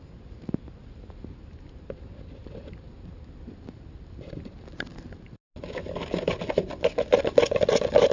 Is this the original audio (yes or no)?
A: yes